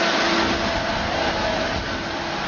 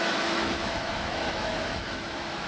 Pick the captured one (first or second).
first